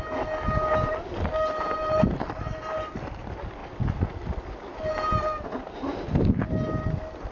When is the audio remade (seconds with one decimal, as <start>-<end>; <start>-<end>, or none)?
none